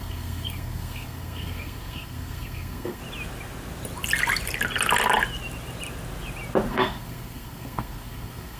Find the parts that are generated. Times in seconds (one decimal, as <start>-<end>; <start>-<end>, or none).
0.0-3.0; 6.7-8.6

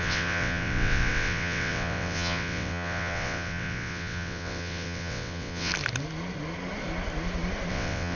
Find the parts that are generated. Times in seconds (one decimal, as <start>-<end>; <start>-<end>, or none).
0.0-5.7; 7.7-8.2

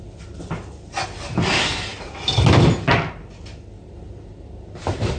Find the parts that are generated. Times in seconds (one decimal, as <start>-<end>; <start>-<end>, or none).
none